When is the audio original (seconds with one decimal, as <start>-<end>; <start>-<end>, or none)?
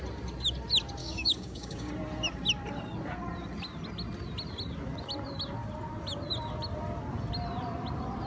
0.0-1.0; 1.9-8.3